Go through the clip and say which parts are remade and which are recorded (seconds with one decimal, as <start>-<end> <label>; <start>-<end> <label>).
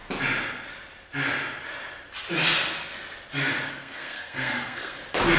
0.0-3.7 recorded; 3.7-5.0 remade; 5.0-5.4 recorded